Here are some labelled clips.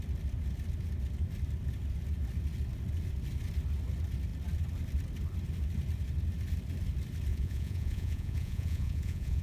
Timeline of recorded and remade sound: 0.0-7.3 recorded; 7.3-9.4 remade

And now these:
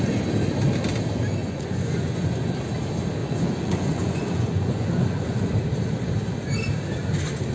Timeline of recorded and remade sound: 0.0-1.4 recorded; 1.4-2.5 remade; 2.5-3.2 recorded; 3.2-5.5 remade; 5.5-7.5 recorded

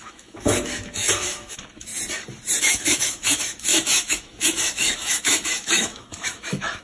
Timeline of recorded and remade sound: 0.0-1.9 remade; 1.9-2.6 recorded; 2.6-6.8 remade

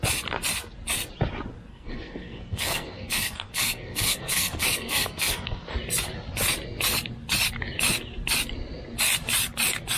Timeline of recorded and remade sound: 0.0-1.7 recorded; 1.7-5.6 remade; 5.6-10.0 recorded

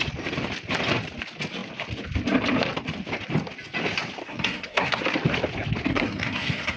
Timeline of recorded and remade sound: 0.0-4.2 recorded; 4.2-5.0 remade; 5.0-5.9 recorded; 5.9-6.8 remade

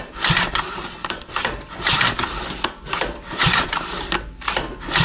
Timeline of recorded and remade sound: 0.0-1.0 recorded; 1.0-4.0 remade; 4.0-5.0 recorded

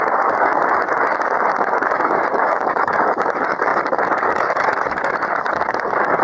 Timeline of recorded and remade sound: 0.0-6.2 remade

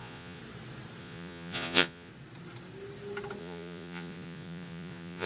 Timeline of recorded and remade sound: 0.0-0.4 remade; 0.4-1.0 recorded; 1.0-2.1 remade; 2.1-3.4 recorded; 3.4-5.3 remade